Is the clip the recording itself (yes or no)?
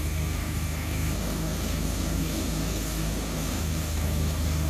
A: no